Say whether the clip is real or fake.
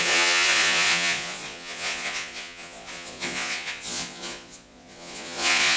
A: fake